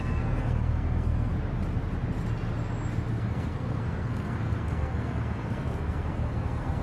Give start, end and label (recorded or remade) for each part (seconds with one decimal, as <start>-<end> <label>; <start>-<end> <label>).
0.0-1.3 remade; 1.3-3.1 recorded; 3.1-6.8 remade